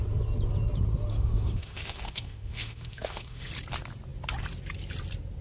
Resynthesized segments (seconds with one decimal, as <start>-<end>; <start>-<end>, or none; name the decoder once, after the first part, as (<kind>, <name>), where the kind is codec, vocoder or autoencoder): 1.1-3.5 (autoencoder, DAC-VAE)

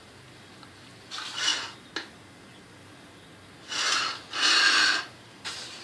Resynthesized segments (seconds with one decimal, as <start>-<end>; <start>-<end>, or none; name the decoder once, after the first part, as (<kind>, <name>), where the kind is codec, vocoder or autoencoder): 0.0-1.5 (vocoder, BigVGAN v2); 4.6-5.8

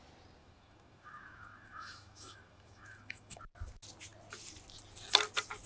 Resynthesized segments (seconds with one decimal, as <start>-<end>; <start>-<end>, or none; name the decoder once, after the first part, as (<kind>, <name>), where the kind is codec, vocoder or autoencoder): 0.4-3.4 (autoencoder, DAC-VAE)

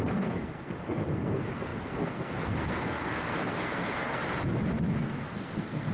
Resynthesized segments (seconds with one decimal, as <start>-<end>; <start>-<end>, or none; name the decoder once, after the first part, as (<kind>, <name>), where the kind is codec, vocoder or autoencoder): 0.0-4.2 (codec, SNAC); 5.0-5.9

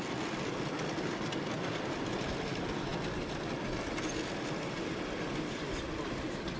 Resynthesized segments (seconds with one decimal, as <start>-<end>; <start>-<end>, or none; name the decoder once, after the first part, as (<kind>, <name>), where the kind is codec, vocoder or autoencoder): none

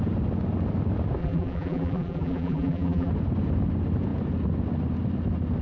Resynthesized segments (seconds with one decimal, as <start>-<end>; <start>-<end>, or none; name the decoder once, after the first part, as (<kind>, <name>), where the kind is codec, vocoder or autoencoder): 1.2-3.1 (vocoder, BigVGAN v2)

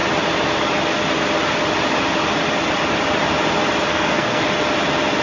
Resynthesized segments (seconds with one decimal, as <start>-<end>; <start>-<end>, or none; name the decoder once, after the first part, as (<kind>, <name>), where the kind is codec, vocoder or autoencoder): 3.9-4.4 (codec, SNAC)